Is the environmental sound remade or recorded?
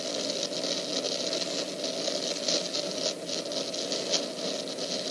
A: recorded